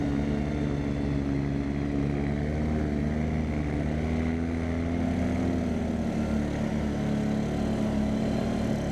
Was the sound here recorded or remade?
recorded